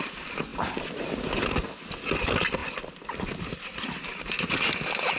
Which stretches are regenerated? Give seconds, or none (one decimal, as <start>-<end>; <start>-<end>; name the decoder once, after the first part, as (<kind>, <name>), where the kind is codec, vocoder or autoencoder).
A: none